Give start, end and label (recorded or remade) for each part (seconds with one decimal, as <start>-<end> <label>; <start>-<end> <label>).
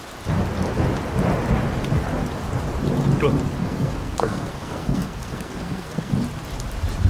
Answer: 0.0-3.6 recorded; 3.6-6.1 remade; 6.1-7.1 recorded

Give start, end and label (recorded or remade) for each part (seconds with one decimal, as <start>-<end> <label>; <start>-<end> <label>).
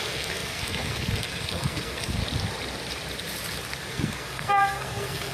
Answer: 0.0-2.2 remade; 2.2-3.9 recorded; 3.9-5.3 remade